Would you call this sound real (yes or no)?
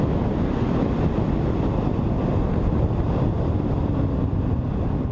yes